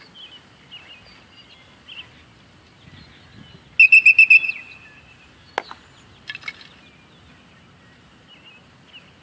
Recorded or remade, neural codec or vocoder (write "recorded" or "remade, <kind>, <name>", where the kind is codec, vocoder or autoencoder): recorded